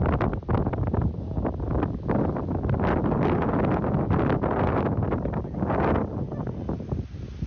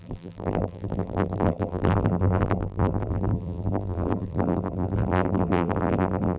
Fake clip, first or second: second